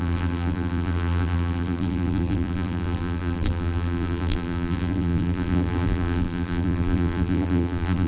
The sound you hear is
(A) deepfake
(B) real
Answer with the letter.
A